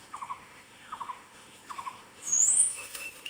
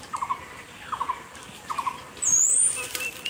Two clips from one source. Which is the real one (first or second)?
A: second